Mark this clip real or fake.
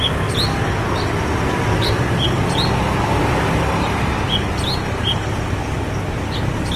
real